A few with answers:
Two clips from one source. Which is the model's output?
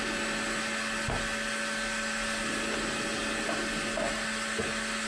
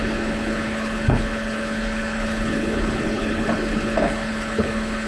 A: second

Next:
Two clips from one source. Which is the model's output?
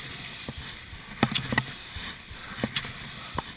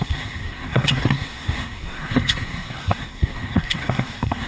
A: second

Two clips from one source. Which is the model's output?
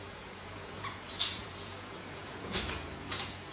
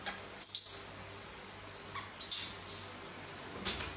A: first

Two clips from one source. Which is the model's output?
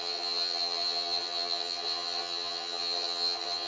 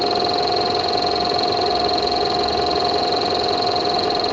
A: first